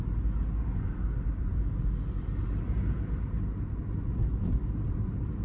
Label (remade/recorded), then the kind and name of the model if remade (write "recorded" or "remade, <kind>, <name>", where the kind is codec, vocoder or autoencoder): recorded